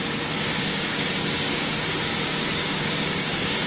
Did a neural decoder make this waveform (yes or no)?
yes